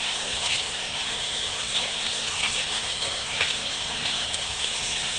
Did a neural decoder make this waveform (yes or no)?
yes